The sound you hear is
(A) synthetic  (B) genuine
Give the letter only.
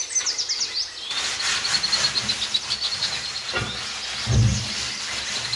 B